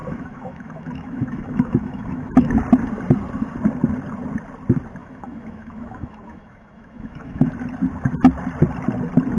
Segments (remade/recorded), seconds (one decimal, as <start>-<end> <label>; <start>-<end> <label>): 0.0-2.5 remade; 2.5-5.0 recorded; 5.0-7.5 remade; 7.5-9.4 recorded